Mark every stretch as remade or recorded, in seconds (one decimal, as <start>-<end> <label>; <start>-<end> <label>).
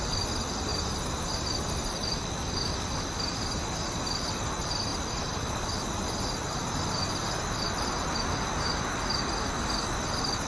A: 0.0-10.5 recorded